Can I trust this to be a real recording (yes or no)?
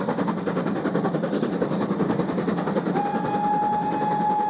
yes